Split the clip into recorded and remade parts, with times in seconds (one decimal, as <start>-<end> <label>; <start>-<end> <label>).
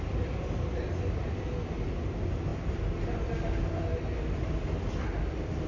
0.0-5.7 recorded